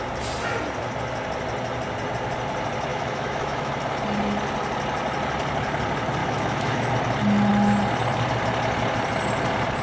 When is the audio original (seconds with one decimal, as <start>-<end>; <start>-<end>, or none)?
0.0-2.9; 3.7-6.2; 6.9-9.8

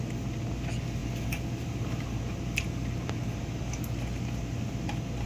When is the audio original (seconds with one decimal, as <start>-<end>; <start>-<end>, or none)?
0.0-5.3